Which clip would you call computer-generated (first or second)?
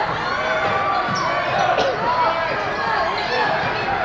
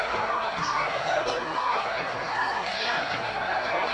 second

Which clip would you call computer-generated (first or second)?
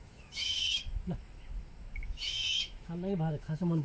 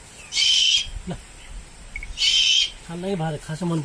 first